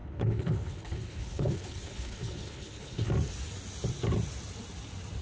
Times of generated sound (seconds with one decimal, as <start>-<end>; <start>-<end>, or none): 0.0-3.1

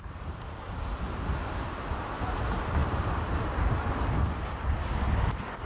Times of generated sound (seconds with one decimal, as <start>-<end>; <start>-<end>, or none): none